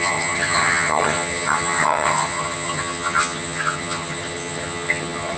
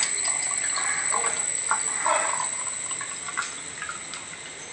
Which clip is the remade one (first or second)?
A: first